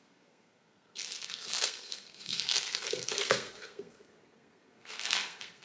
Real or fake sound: fake